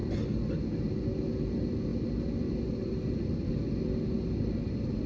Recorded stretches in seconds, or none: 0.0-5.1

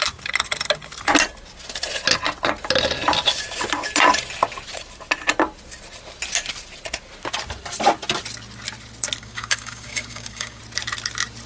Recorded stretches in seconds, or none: 0.0-9.2; 10.6-11.5

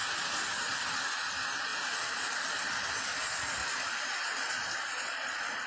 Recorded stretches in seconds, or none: 0.0-3.6

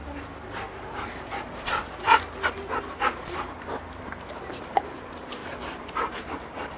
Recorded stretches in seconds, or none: 0.0-0.7; 1.8-2.8

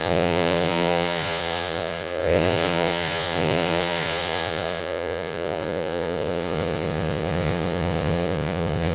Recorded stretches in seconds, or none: none